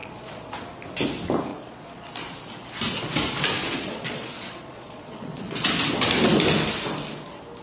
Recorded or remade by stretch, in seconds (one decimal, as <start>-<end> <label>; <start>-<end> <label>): 0.0-0.6 remade; 0.6-1.5 recorded; 1.5-2.1 remade; 2.1-3.6 recorded; 3.6-5.7 remade; 5.7-7.6 recorded